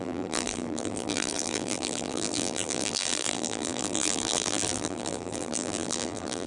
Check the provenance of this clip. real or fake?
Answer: fake